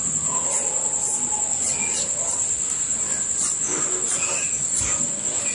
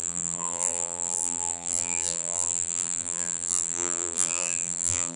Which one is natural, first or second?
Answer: first